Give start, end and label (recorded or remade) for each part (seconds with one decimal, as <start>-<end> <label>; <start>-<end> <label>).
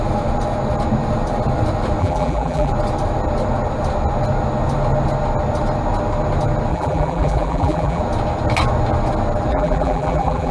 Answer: 0.0-2.0 recorded; 2.0-2.7 remade; 2.7-6.7 recorded; 6.7-8.0 remade; 8.0-9.5 recorded; 9.5-10.5 remade